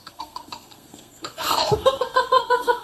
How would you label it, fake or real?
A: fake